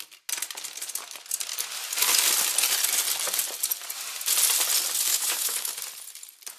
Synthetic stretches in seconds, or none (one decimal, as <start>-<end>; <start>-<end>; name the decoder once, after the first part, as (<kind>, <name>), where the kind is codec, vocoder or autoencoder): 5.1-5.7 (autoencoder, DAC-VAE)